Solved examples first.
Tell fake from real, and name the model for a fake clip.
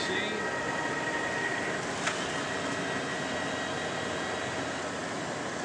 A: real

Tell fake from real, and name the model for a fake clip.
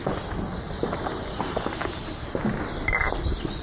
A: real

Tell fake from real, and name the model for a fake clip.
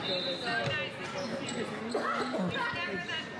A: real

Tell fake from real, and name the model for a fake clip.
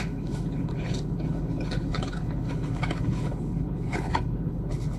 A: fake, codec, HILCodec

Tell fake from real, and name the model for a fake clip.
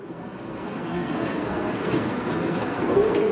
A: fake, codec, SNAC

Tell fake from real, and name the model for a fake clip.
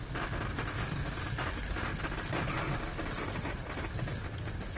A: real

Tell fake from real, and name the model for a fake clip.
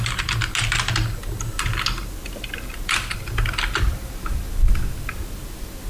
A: real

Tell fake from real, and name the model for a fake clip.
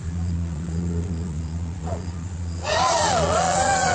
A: fake, vocoder, Vocos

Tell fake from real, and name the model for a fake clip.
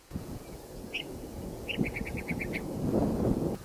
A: fake, vocoder, Vocos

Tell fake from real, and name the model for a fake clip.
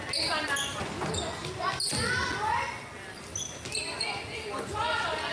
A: real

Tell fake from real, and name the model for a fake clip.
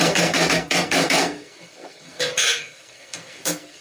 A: fake, codec, SNAC